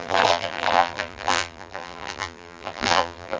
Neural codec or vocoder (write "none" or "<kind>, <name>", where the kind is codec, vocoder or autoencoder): vocoder, BigVGAN v2